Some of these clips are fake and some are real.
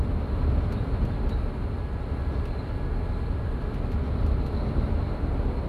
real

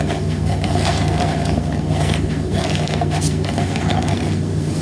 fake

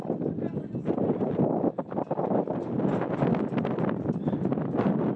real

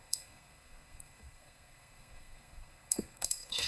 fake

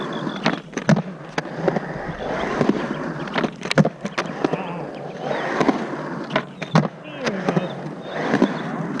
real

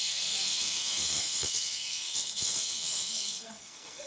fake